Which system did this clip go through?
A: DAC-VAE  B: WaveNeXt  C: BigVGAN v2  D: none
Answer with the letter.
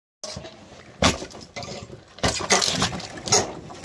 D